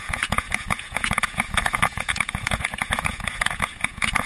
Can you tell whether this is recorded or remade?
remade